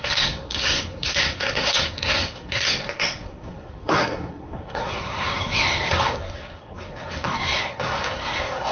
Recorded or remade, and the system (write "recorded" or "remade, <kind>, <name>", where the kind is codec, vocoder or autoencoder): remade, codec, SNAC